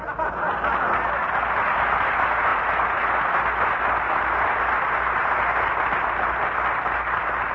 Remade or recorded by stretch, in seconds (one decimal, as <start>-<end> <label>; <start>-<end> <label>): 0.0-7.5 recorded